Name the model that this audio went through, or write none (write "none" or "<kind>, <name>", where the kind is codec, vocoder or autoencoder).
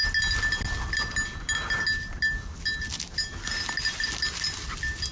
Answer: none